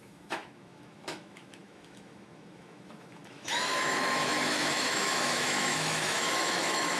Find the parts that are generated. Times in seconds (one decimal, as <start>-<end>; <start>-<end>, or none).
0.0-7.0